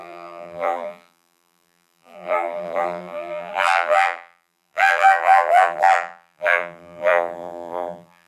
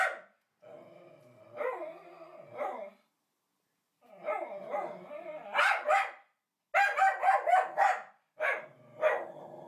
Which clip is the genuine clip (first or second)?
second